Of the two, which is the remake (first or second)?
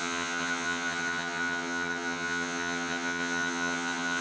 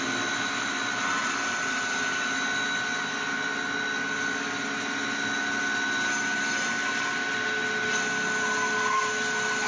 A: first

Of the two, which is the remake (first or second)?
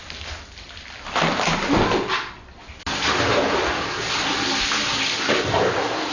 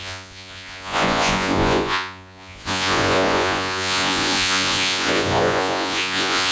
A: second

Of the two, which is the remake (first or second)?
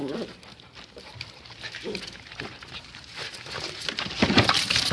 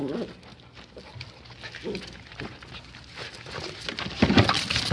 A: first